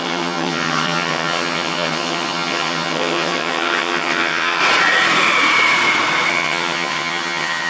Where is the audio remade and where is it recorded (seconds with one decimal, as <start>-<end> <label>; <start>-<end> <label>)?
0.0-4.6 remade; 4.6-6.3 recorded; 6.3-7.7 remade